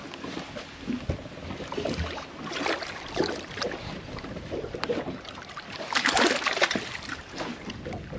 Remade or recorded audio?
recorded